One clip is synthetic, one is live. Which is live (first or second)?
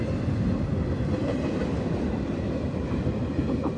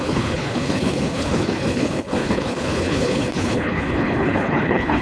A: first